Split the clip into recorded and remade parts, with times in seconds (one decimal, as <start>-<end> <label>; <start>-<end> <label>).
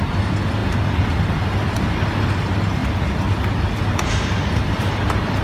0.0-5.4 recorded